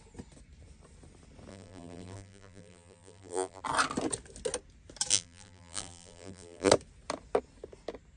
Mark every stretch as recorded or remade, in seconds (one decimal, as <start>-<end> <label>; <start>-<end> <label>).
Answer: 0.0-1.5 recorded; 1.5-3.6 remade; 3.6-5.1 recorded; 5.1-6.7 remade; 6.7-8.2 recorded